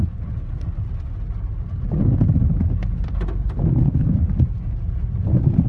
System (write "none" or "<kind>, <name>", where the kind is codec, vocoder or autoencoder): none